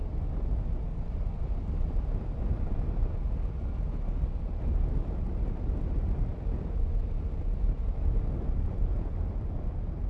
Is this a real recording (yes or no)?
yes